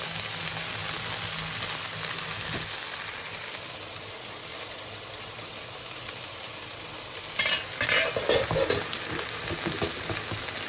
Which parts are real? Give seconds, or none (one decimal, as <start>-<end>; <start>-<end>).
0.0-10.7